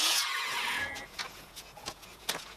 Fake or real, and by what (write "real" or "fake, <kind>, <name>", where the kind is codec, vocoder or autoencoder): fake, vocoder, Vocos